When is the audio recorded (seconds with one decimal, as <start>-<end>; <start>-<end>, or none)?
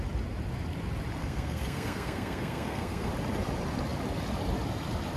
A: 0.0-1.2; 3.1-5.2